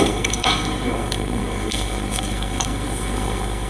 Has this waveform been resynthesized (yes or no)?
yes